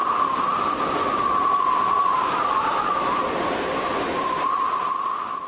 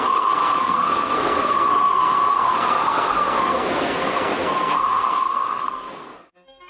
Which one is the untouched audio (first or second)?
first